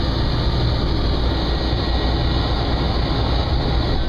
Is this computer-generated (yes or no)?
no